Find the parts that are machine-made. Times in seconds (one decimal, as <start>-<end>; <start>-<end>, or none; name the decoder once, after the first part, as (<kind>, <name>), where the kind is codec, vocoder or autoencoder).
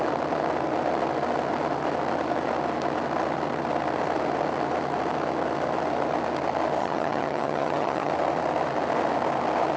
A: 6.8-8.1 (vocoder, HiFi-GAN)